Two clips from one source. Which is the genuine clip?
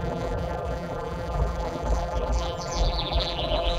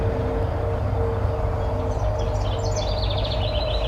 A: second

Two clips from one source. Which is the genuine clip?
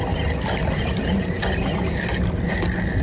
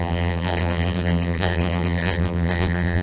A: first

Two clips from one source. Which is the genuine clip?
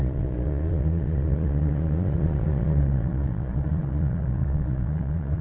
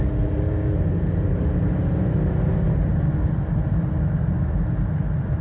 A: second